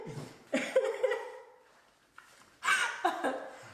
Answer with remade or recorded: recorded